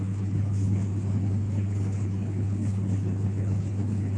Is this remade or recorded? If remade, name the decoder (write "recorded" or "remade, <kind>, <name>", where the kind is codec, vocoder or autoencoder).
remade, codec, HILCodec